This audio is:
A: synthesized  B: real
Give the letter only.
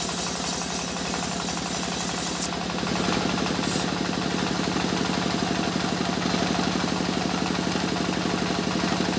B